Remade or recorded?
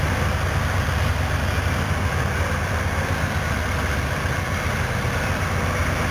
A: remade